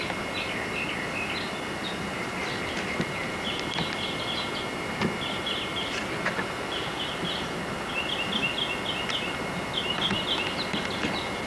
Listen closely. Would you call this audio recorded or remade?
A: recorded